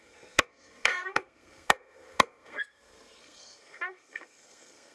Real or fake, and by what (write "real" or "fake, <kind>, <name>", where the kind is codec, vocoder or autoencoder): fake, codec, SNAC